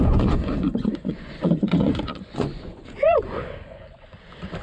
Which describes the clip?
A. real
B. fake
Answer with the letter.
B